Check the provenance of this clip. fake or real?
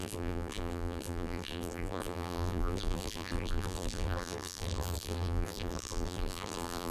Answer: fake